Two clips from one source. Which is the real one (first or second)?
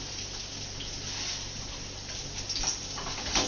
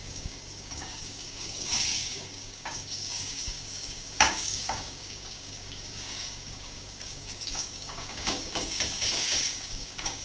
first